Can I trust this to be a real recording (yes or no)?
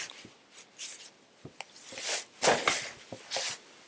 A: yes